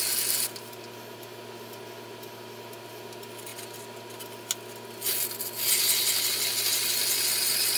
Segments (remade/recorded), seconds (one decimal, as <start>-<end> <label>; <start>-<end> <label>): 0.0-7.8 recorded